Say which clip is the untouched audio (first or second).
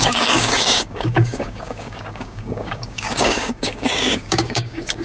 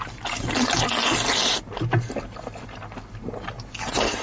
second